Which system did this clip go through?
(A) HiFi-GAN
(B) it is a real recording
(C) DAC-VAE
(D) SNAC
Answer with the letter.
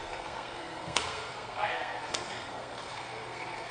D